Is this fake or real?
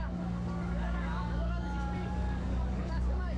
fake